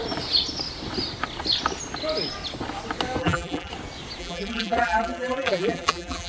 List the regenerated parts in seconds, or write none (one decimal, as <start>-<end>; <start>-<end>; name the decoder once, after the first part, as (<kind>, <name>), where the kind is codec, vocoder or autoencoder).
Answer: 3.2-3.7 (vocoder, BigVGAN v2); 4.2-6.3